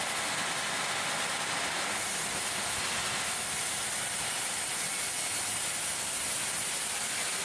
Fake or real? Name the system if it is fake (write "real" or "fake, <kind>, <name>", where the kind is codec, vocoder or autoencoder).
real